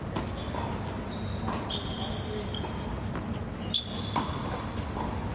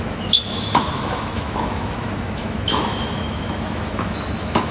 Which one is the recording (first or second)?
first